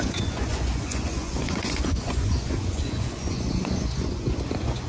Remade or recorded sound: remade